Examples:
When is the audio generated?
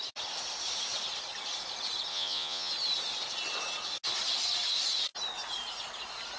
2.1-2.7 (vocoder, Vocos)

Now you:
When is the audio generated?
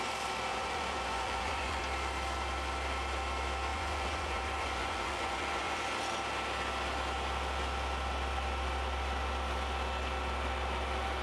0.5-1.8 (vocoder, Vocos); 3.7-5.8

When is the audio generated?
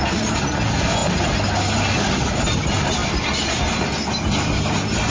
none